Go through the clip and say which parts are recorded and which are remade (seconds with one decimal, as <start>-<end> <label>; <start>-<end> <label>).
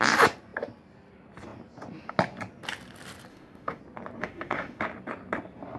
0.0-3.3 recorded; 3.3-3.8 remade; 3.8-4.2 recorded; 4.2-4.8 remade; 4.8-5.8 recorded